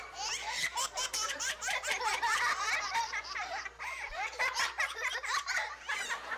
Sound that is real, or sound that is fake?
fake